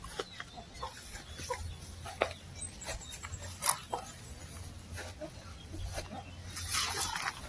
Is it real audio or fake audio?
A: real